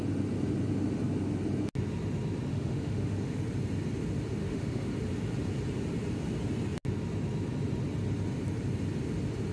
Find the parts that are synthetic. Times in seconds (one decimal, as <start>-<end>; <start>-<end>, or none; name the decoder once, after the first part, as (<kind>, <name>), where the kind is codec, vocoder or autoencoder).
2.5-3.4 (autoencoder, DAC-VAE); 4.4-4.9